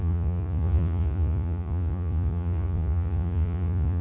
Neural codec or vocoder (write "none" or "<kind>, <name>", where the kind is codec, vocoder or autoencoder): vocoder, Vocos